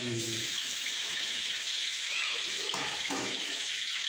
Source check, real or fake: fake